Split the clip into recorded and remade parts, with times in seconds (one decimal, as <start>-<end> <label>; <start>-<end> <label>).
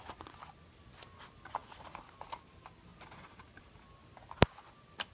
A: 0.0-5.1 recorded